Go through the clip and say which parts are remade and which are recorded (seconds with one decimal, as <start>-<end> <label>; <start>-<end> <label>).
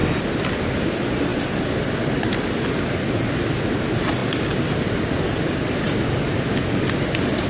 0.0-7.5 recorded